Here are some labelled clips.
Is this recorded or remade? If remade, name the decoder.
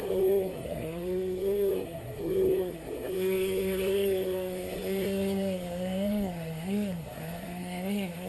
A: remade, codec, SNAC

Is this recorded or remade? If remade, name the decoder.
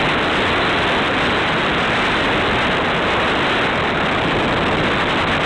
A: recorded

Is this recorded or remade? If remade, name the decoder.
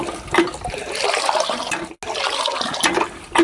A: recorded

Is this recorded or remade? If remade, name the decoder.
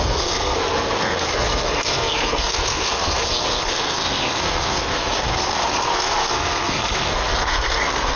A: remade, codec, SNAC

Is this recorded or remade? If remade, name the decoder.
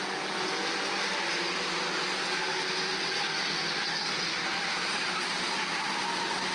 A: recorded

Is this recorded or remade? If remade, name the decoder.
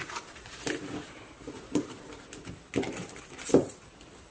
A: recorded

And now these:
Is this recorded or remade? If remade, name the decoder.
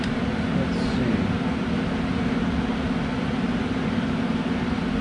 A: recorded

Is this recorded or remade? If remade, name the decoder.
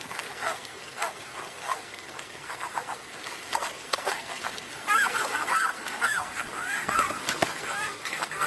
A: remade, codec, SNAC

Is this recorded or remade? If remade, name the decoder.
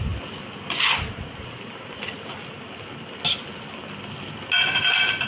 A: recorded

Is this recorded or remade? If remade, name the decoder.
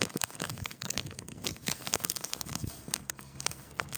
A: remade, codec, SNAC